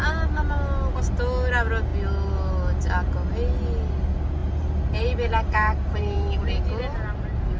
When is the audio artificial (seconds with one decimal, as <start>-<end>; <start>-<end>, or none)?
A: 4.4-6.4